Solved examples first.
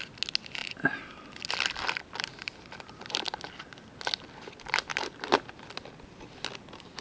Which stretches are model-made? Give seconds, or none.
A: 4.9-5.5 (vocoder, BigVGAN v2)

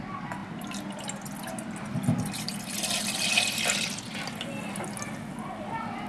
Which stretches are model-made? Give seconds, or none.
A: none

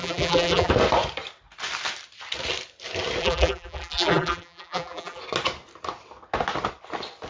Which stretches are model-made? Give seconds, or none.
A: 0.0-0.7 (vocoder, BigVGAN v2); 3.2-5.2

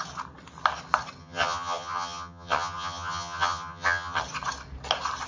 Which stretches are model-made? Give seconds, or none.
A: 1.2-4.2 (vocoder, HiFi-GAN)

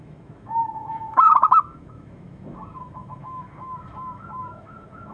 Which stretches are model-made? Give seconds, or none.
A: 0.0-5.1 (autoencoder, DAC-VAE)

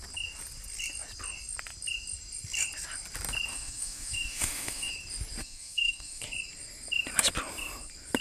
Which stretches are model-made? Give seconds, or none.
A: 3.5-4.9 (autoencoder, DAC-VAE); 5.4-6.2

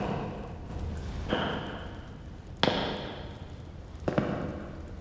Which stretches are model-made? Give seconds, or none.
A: none